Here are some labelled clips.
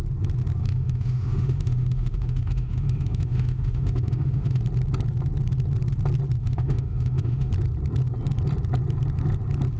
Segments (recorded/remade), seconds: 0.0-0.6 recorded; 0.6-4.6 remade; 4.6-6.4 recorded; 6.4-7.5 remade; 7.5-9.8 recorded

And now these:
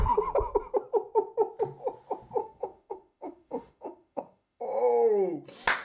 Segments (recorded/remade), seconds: 0.0-2.4 recorded; 2.4-4.6 remade; 4.6-5.8 recorded

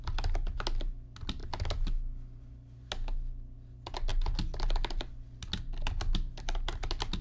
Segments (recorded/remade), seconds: 0.0-7.2 recorded

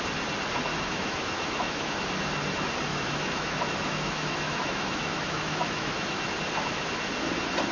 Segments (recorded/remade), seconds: 0.0-0.7 recorded; 0.7-2.0 remade; 2.0-2.9 recorded; 2.9-6.3 remade; 6.3-7.7 recorded

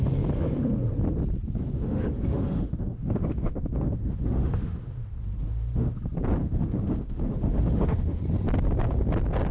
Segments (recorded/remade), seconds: 0.0-1.6 recorded; 1.6-6.0 remade; 6.0-6.4 recorded; 6.4-8.2 remade; 8.2-9.5 recorded

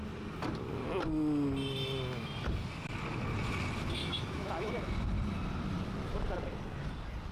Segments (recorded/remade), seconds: 0.0-4.0 recorded; 4.0-4.7 remade; 4.7-7.3 recorded

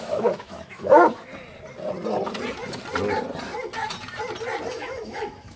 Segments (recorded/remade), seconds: 0.0-1.3 remade; 1.3-4.7 recorded; 4.7-5.6 remade

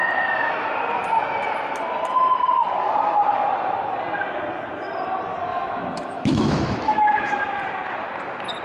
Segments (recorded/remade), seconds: 0.0-5.5 recorded; 5.5-7.4 remade; 7.4-8.6 recorded